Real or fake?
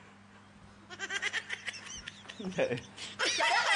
real